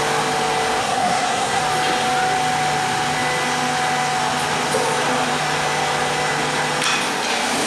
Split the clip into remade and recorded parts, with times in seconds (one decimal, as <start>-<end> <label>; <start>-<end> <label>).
0.0-0.8 recorded; 0.8-1.6 remade; 1.6-7.7 recorded